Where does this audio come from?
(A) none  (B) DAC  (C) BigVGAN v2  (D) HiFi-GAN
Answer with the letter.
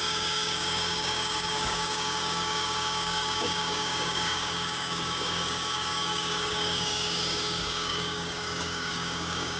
B